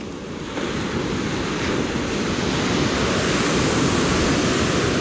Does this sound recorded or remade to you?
recorded